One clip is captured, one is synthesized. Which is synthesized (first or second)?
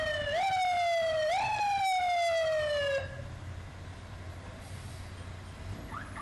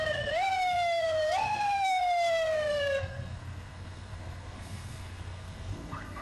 second